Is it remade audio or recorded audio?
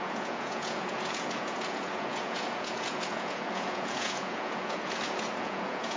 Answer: remade